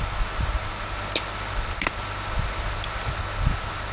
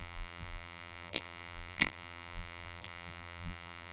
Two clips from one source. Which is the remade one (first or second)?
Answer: second